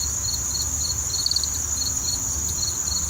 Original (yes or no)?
yes